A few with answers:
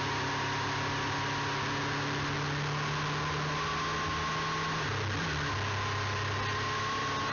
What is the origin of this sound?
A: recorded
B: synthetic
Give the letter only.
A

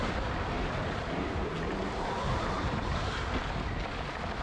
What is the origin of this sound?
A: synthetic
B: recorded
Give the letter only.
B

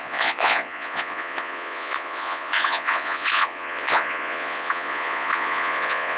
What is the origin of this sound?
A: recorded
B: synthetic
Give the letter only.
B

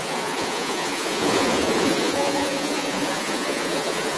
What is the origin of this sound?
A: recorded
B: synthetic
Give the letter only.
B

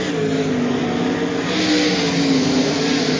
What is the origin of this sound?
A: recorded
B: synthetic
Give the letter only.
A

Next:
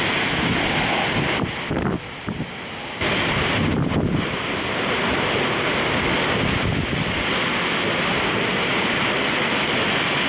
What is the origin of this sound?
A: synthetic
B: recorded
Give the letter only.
B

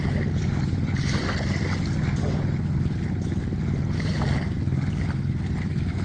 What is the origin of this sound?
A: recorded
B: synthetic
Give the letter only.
A